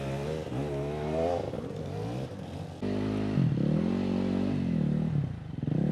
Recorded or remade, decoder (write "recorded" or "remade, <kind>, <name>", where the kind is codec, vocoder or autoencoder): recorded